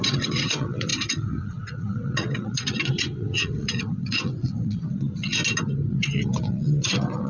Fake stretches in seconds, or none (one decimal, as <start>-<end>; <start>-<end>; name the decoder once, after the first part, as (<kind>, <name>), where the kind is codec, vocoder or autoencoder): 0.0-5.4 (vocoder, WaveNeXt); 5.9-7.3